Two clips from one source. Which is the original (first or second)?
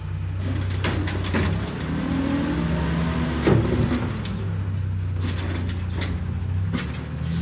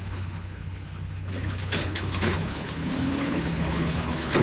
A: first